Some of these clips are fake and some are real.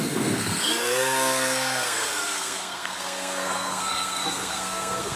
fake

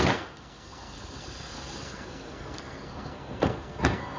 fake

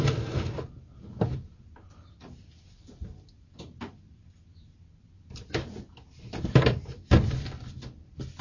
real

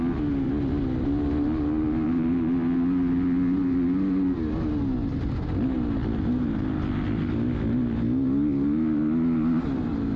real